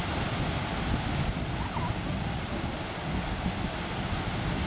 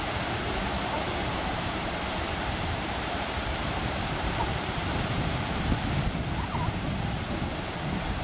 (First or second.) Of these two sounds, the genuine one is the first